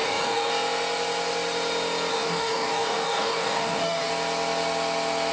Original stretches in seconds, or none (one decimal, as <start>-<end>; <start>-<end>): 0.5-2.1; 4.1-5.3